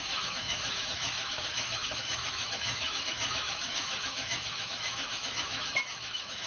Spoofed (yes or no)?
yes